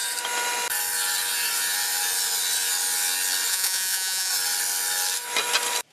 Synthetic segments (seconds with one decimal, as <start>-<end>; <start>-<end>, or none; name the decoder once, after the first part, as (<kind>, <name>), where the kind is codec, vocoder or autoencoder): 3.5-4.3 (vocoder, Vocos)